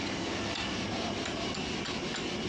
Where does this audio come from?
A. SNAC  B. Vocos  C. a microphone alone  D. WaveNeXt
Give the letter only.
C